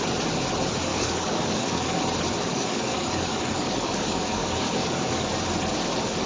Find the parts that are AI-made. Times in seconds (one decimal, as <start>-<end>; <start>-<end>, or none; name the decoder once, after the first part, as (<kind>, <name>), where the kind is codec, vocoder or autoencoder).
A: 0.9-2.0 (codec, DAC); 2.5-5.3